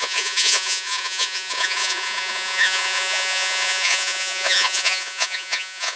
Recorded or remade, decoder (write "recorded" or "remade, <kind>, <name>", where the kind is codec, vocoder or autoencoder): remade, vocoder, Vocos